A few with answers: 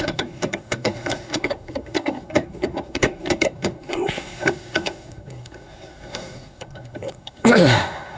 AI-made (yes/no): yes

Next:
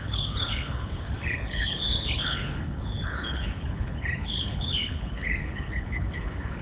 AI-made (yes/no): yes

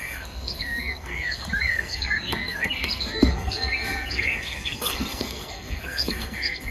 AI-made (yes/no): yes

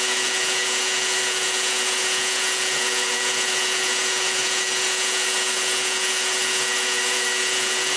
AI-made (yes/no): yes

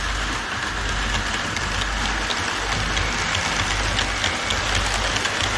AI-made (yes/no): no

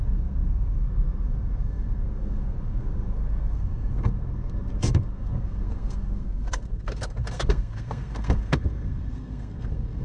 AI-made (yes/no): yes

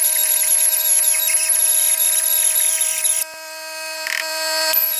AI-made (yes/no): yes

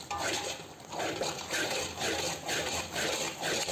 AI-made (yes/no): no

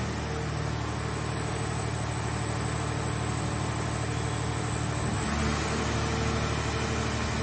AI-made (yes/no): no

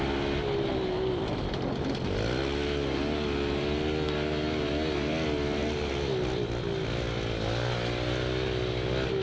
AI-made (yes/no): no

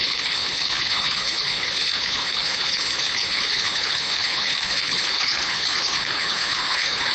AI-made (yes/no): yes